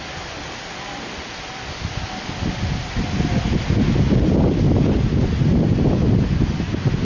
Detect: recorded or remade recorded